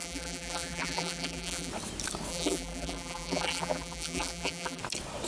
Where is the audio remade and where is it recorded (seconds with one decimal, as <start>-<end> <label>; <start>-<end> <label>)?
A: 0.0-1.7 remade; 1.7-2.3 recorded; 2.3-4.8 remade; 4.8-5.3 recorded